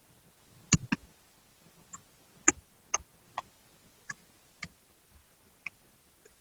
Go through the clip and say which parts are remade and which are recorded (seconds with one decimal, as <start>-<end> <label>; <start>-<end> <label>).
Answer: 0.0-6.4 recorded